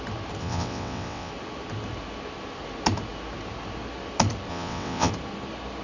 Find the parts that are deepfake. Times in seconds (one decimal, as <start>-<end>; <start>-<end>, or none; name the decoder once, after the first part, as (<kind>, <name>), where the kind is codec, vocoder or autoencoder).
0.4-1.3 (vocoder, WaveNeXt); 4.5-5.1